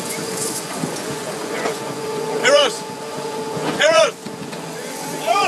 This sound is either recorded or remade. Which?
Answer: remade